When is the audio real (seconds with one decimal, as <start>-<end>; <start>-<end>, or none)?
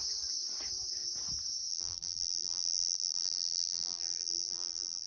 0.0-1.7